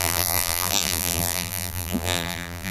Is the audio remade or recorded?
remade